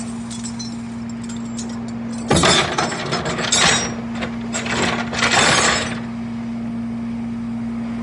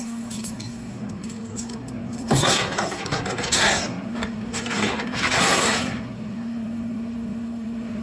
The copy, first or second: second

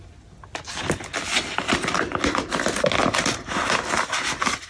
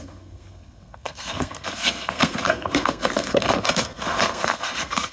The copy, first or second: second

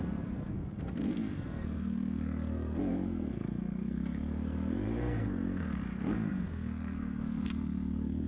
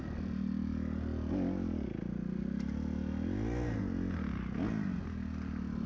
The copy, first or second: first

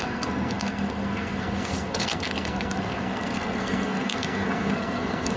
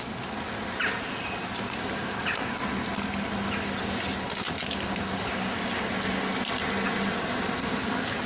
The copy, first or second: first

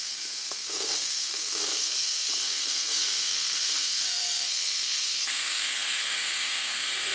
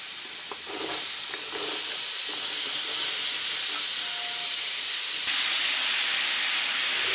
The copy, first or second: first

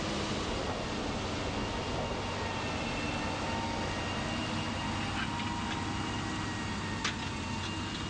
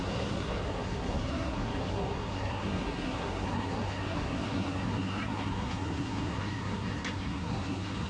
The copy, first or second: second